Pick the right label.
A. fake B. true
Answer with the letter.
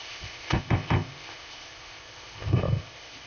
A